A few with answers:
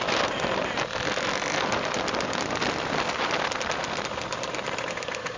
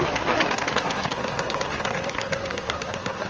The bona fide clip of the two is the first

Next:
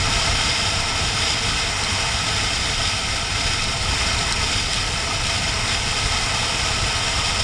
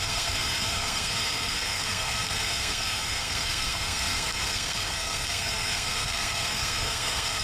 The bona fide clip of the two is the first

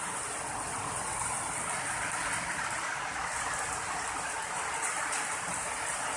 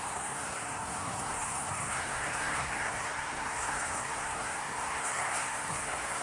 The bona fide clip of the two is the first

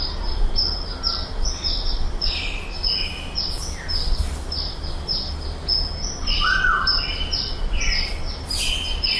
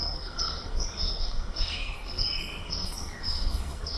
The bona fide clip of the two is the first